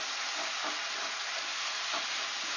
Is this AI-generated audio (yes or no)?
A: no